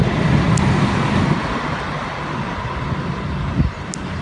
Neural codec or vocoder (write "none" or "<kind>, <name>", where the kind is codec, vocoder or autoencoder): none